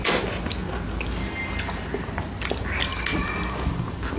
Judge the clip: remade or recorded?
recorded